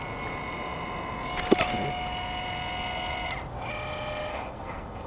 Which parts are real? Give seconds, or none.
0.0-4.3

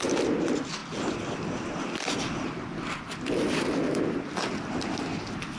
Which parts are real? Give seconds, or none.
0.0-5.6

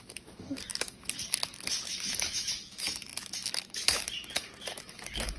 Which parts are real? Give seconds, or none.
none

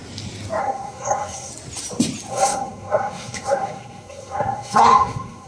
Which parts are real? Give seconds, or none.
0.0-0.6; 1.5-2.3

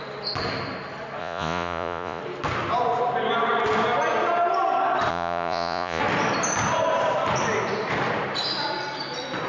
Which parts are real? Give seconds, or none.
0.0-1.2; 2.2-5.1; 6.0-9.5

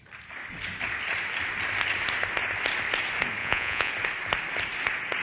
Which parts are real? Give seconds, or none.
0.0-3.4; 3.9-5.2